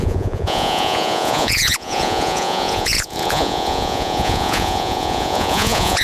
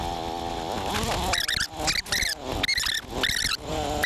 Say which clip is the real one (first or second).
second